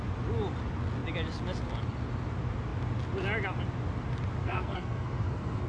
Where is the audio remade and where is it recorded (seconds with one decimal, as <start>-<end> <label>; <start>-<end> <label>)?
0.0-4.4 recorded; 4.4-5.7 remade